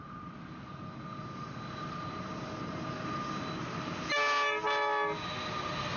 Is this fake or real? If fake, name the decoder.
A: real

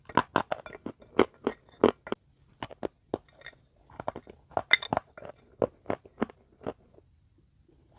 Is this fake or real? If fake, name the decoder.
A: real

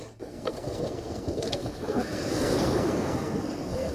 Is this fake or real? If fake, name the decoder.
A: fake, codec, SNAC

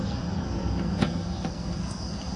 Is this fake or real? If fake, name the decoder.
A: fake, codec, SNAC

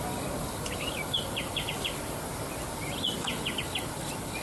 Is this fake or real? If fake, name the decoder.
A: real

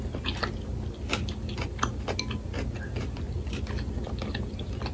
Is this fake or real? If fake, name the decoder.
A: real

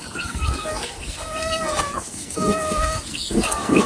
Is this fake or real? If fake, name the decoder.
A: fake, codec, SNAC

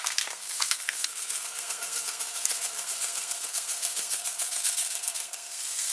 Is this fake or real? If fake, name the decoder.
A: fake, codec, SNAC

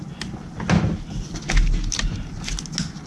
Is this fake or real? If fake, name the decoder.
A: real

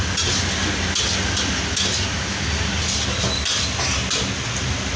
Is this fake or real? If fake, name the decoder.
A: real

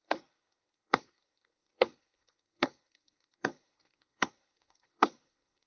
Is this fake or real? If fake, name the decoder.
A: fake, codec, SNAC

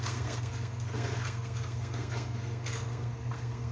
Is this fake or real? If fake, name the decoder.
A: fake, codec, SNAC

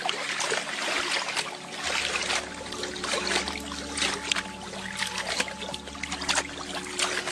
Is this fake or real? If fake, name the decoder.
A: real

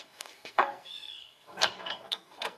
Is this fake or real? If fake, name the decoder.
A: fake, codec, SNAC